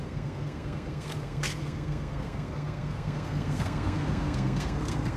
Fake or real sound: fake